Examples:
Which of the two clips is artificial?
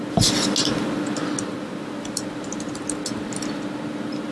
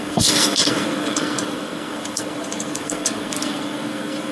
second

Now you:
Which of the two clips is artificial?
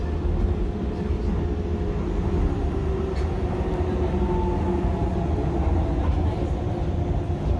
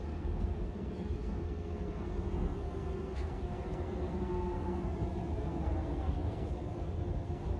second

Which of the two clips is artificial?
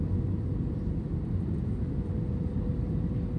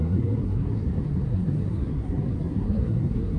second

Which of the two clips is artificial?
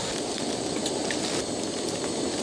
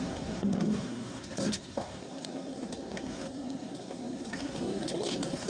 second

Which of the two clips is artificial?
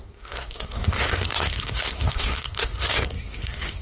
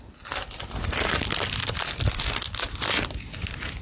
first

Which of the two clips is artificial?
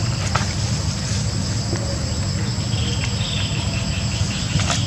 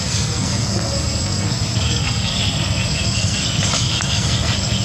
second